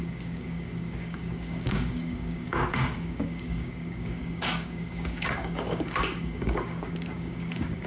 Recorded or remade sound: remade